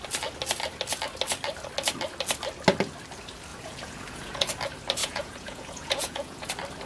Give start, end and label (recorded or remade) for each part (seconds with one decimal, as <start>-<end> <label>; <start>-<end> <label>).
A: 0.0-3.5 recorded; 3.5-4.5 remade; 4.5-5.0 recorded; 5.0-6.5 remade; 6.5-6.9 recorded